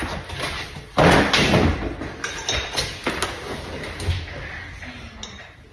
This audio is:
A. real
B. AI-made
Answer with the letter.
A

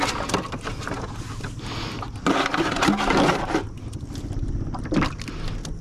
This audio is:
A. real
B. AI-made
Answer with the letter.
A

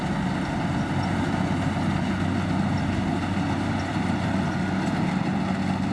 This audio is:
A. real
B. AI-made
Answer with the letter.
A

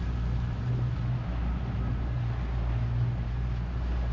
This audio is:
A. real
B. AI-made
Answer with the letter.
A